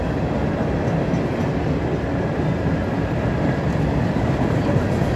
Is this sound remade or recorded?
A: recorded